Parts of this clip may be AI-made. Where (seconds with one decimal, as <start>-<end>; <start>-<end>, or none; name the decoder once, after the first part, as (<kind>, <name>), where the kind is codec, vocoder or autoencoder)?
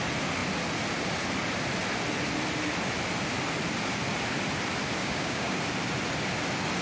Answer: 5.0-5.6 (codec, DAC)